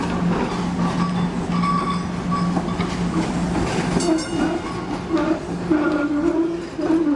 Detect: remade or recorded recorded